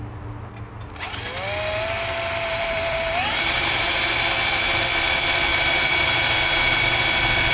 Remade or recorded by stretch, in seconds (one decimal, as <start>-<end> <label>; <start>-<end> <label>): 0.0-2.5 recorded; 2.5-4.0 remade; 4.0-5.5 recorded; 5.5-6.8 remade; 6.8-7.5 recorded